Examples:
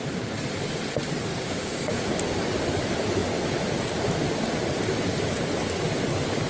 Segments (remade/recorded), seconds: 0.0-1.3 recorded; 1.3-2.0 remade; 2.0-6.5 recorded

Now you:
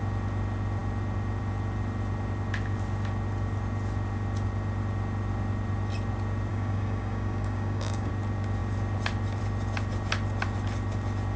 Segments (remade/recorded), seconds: 0.0-6.5 recorded; 6.5-8.1 remade; 8.1-11.4 recorded

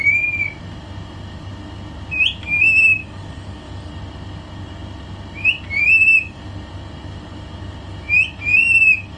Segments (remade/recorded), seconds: 0.0-2.4 recorded; 2.4-3.9 remade; 3.9-9.2 recorded

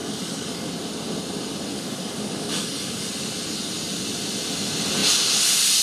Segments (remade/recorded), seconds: 0.0-0.7 remade; 0.7-1.7 recorded; 1.7-3.1 remade; 3.1-5.8 recorded

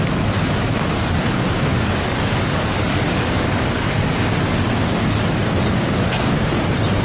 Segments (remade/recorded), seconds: 0.0-1.7 recorded; 1.7-4.1 remade; 4.1-7.0 recorded